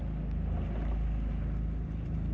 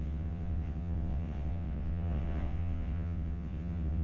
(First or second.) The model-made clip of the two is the second